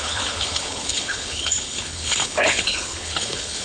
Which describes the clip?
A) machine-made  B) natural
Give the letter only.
A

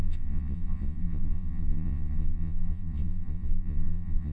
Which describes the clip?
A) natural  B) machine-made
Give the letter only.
B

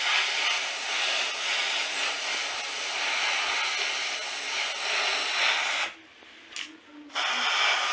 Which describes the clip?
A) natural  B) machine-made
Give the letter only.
A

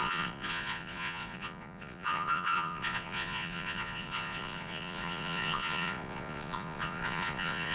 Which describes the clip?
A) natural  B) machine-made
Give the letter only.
B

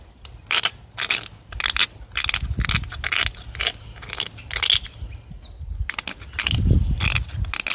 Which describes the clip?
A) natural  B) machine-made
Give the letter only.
A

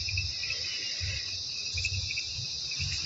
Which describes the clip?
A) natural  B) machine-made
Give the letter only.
A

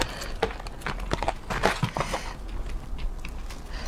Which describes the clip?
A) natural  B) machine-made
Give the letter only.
A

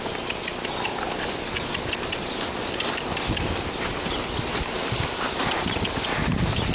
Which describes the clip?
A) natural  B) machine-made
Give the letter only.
A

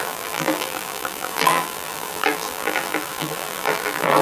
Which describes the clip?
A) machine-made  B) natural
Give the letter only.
A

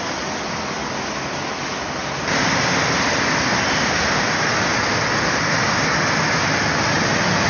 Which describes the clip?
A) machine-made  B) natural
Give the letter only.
B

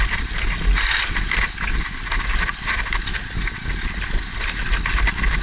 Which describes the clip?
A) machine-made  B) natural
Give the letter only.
B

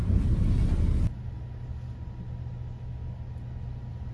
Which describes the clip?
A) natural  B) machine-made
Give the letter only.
A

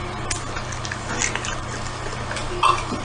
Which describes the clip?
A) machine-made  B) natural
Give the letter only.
B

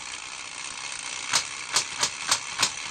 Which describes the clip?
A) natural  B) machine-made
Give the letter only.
A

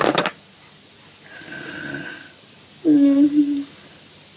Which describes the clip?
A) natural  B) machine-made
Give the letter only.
A